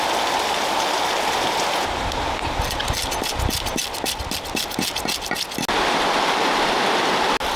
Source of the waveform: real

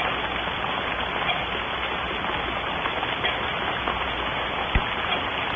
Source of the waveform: real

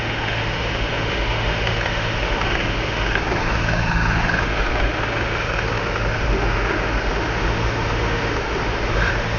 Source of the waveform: fake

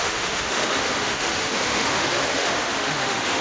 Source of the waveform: fake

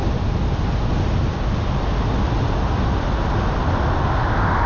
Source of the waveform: real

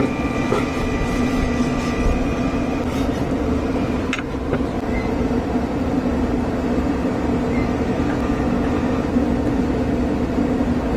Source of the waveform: real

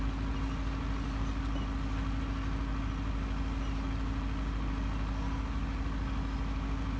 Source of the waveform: real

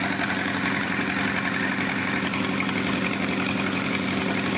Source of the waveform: real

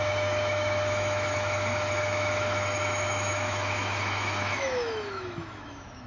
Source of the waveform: fake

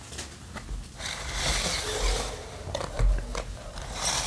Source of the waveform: real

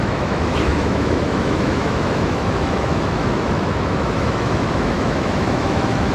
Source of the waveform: fake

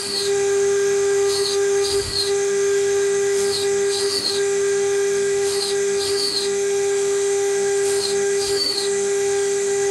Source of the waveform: fake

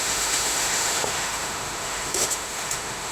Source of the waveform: fake